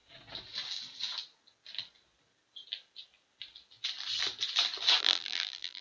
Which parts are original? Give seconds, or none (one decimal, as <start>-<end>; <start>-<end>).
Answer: 0.0-5.0